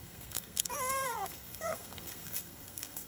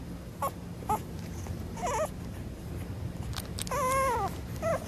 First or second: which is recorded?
second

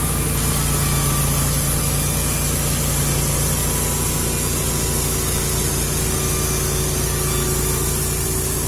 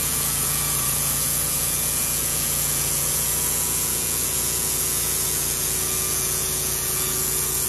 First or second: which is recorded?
first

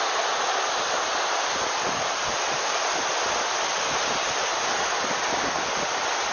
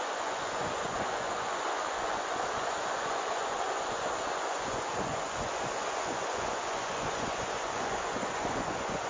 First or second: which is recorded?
first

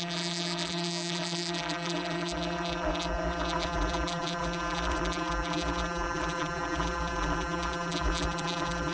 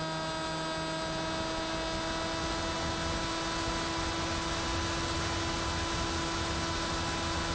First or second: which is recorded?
second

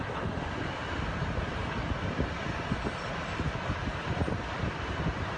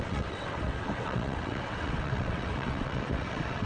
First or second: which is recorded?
first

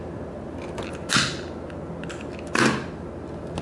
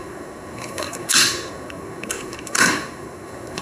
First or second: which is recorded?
first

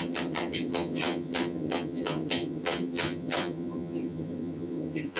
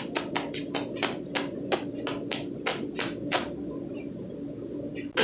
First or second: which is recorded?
second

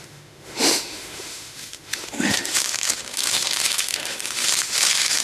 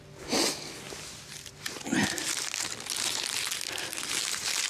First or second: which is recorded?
second